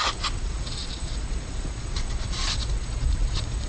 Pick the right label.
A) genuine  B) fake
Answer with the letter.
B